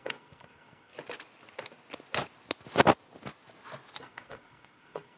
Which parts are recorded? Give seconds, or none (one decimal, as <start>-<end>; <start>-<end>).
0.9-4.0